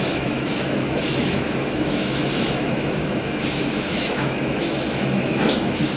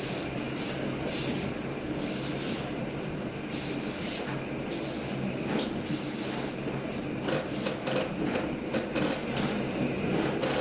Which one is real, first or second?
second